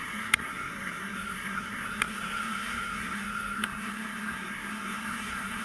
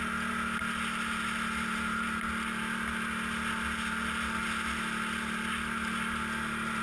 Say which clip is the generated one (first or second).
first